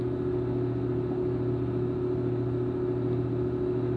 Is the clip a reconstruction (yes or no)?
no